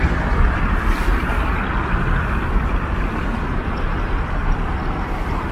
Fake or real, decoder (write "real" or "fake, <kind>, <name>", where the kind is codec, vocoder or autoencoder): fake, vocoder, BigVGAN v2